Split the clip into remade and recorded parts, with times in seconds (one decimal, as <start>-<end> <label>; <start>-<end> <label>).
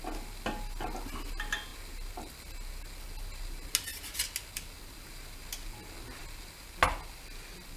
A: 0.0-7.8 recorded